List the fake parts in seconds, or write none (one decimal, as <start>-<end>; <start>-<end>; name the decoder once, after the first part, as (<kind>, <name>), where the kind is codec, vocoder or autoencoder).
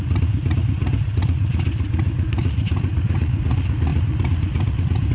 0.0-5.1 (vocoder, Vocos)